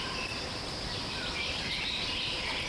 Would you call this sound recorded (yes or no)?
no